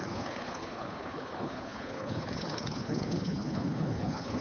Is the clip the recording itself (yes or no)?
no